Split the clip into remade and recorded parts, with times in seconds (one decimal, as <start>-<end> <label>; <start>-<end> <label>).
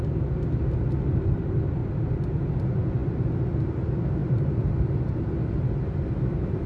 0.0-1.8 recorded; 1.8-2.3 remade; 2.3-4.2 recorded; 4.2-5.2 remade; 5.2-6.7 recorded